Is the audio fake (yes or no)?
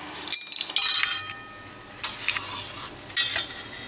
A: no